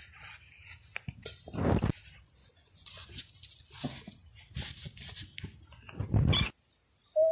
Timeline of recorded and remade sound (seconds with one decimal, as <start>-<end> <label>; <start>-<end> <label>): 0.0-2.4 recorded; 2.4-3.2 remade; 3.2-7.3 recorded